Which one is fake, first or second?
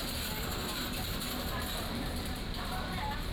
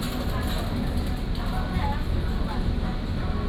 first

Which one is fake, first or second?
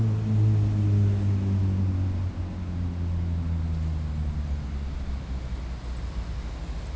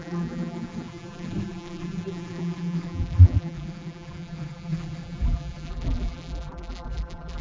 second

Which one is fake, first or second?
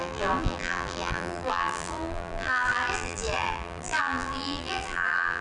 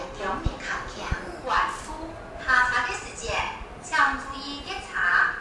first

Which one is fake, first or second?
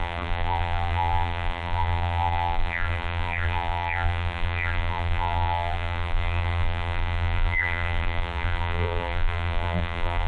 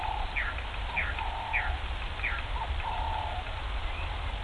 first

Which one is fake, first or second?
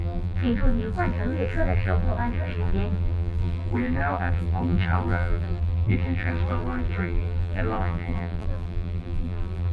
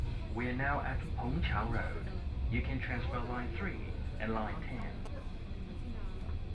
first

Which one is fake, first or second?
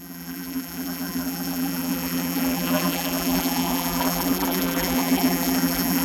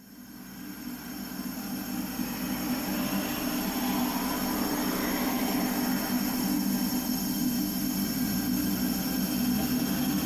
first